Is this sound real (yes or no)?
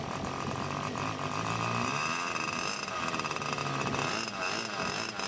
yes